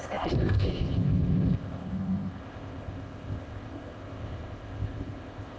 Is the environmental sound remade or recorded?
remade